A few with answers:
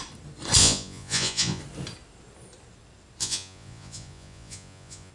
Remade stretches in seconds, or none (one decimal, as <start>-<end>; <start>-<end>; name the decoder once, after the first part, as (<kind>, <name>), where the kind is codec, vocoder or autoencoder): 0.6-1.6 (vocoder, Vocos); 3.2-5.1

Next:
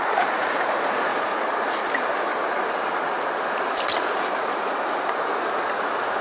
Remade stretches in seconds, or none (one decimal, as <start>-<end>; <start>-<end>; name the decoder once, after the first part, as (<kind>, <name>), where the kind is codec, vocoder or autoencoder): 0.0-1.8 (vocoder, Vocos); 4.0-6.2

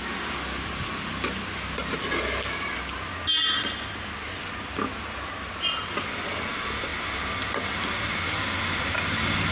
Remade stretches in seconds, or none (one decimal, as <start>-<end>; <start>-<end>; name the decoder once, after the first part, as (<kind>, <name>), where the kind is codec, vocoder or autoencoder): none